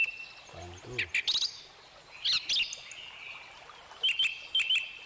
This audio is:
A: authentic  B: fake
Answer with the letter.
A